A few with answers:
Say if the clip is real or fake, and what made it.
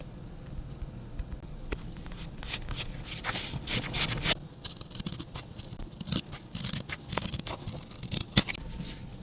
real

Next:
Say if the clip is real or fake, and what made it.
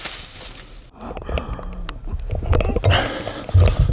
real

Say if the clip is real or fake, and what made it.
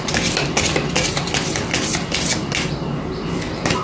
real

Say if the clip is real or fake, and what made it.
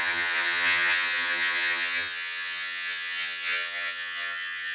fake, vocoder, HiFi-GAN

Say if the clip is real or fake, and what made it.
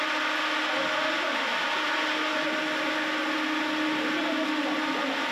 real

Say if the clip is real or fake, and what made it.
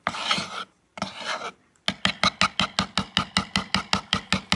real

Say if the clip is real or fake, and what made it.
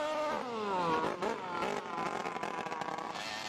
real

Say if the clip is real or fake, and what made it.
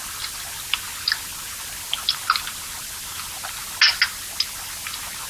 real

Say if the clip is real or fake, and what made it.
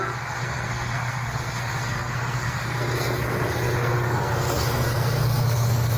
fake, codec, SNAC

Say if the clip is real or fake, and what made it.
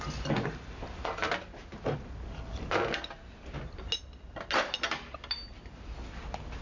real